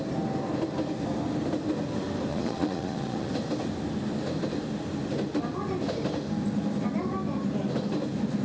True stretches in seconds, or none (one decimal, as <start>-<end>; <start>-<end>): 0.0-2.3; 3.3-8.4